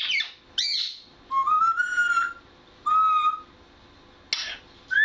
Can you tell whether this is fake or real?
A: real